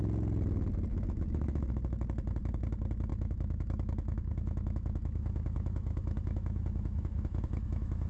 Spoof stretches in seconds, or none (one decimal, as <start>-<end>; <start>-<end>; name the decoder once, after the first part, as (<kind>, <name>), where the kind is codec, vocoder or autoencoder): 0.9-1.7 (autoencoder, DAC-VAE); 3.1-8.1